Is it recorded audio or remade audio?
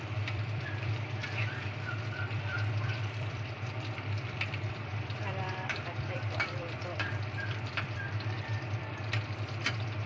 remade